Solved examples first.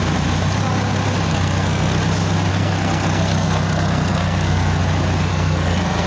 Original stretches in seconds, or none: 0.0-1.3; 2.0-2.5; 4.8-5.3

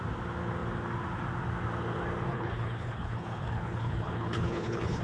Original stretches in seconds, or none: 0.0-2.3